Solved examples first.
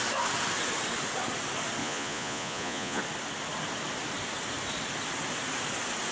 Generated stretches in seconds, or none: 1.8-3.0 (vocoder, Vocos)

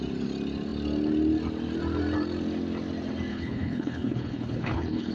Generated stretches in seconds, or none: 3.3-5.1 (codec, HILCodec)